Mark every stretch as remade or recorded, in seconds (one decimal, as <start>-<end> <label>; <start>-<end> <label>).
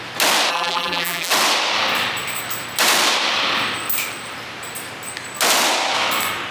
0.0-0.5 recorded; 0.5-1.3 remade; 1.3-6.5 recorded